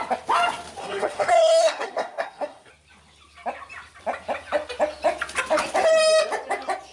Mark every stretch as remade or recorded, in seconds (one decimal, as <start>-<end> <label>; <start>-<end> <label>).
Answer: 0.0-0.8 recorded; 0.8-2.7 remade; 2.7-6.9 recorded